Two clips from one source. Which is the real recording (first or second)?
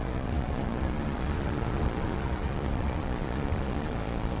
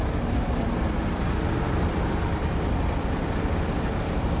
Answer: second